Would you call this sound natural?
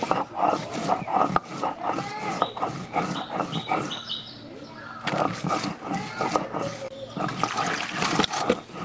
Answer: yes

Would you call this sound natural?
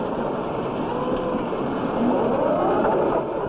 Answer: yes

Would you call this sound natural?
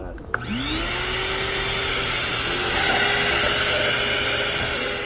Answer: yes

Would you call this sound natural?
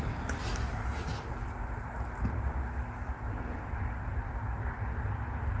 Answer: no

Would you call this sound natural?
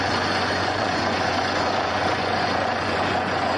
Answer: no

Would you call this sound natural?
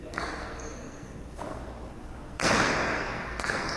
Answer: no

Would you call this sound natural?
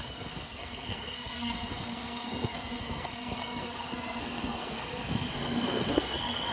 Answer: no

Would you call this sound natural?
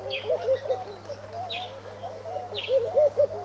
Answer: no